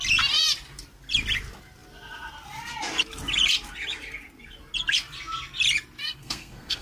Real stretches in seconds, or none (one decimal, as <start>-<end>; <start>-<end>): 0.0-6.0